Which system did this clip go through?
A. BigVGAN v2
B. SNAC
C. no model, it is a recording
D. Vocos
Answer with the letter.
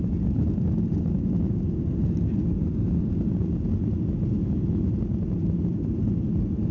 C